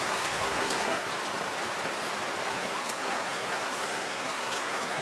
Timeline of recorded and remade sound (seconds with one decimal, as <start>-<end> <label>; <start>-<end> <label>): 0.0-1.1 remade; 1.1-2.5 recorded; 2.5-5.0 remade